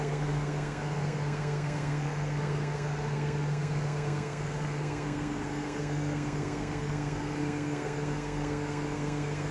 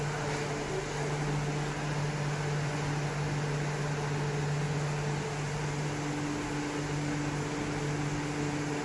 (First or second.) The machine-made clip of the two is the first